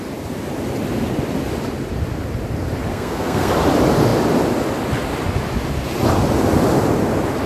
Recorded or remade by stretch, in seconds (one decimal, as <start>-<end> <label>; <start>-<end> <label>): 0.0-2.9 recorded; 2.9-3.5 remade; 3.5-7.5 recorded